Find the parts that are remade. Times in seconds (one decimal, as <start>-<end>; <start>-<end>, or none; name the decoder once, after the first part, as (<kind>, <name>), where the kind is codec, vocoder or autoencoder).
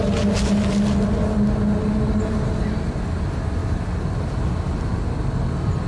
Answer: none